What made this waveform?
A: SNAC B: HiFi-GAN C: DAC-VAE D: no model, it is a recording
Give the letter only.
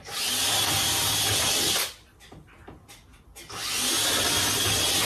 D